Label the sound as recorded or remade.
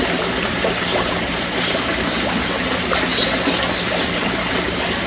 recorded